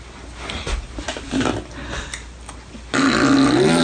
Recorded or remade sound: recorded